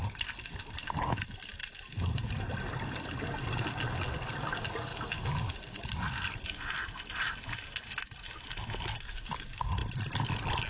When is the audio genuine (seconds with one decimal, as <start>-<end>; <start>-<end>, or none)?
0.0-10.7